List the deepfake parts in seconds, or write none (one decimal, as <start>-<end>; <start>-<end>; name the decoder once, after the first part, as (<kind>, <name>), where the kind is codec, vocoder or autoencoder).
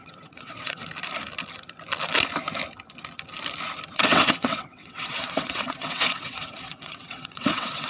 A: 0.0-0.8 (vocoder, WaveNeXt); 3.9-7.9